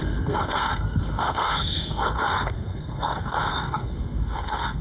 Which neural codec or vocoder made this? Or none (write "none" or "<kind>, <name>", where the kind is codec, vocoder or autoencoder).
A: codec, SNAC